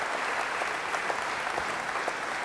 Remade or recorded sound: recorded